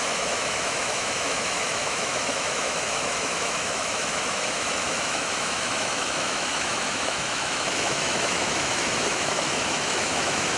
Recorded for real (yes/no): no